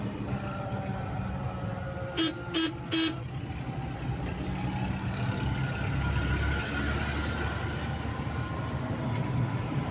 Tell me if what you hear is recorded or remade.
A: recorded